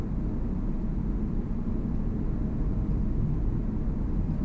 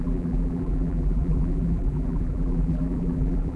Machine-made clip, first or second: second